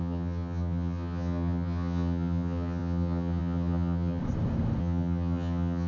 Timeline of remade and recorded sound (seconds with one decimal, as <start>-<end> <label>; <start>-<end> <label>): 0.0-4.2 remade; 4.2-4.8 recorded; 4.8-5.9 remade